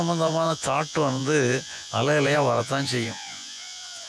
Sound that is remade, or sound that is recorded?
remade